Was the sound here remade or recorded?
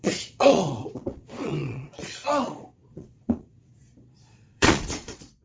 remade